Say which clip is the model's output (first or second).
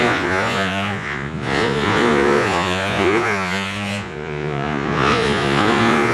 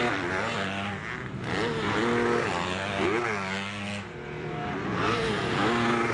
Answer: first